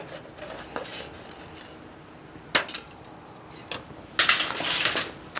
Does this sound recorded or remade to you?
recorded